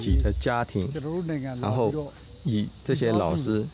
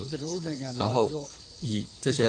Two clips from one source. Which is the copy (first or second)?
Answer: second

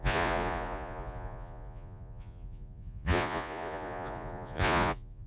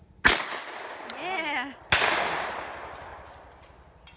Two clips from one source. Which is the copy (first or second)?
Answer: first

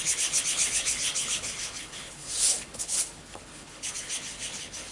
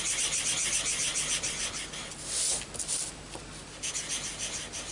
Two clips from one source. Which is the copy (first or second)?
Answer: first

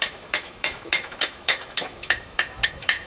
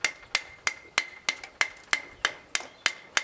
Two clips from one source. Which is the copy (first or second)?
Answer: first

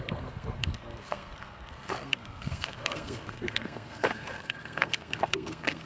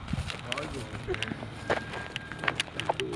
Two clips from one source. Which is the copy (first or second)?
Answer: first